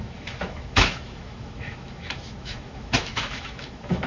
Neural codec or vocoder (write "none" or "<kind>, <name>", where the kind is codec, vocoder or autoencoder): autoencoder, DAC-VAE